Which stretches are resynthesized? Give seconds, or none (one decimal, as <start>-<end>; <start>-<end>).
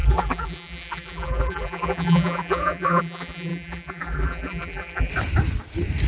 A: 0.0-5.1